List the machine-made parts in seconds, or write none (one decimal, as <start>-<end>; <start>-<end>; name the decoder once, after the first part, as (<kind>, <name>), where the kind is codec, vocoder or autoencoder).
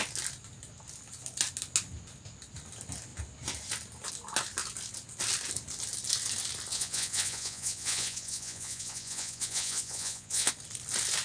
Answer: 6.7-10.5 (vocoder, Vocos)